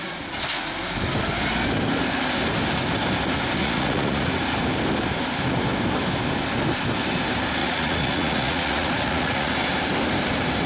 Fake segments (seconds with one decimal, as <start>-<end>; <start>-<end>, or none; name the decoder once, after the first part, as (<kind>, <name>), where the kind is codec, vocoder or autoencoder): 3.6-4.3 (vocoder, Vocos); 7.6-9.5